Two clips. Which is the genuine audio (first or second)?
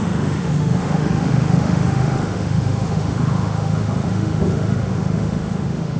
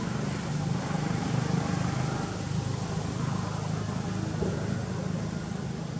second